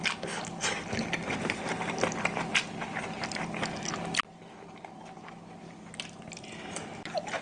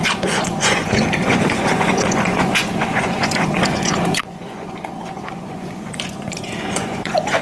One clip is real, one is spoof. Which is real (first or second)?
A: first